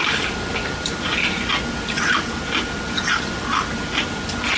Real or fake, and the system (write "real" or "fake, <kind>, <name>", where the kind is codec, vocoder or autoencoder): real